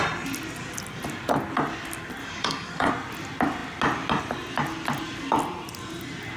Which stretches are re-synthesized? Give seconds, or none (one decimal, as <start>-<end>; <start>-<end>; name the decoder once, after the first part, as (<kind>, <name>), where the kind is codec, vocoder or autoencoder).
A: 2.2-2.9 (codec, DAC)